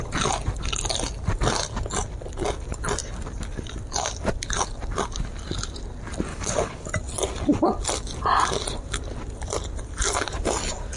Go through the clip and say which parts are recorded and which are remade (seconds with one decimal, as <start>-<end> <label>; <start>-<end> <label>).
0.0-6.3 recorded; 6.3-6.9 remade; 6.9-11.0 recorded